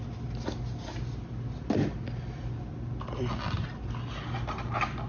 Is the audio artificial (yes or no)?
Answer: no